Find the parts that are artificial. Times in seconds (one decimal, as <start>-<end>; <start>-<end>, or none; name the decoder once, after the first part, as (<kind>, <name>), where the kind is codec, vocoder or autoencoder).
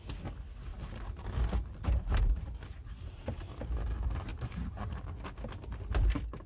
0.7-3.5 (vocoder, BigVGAN v2); 4.3-5.1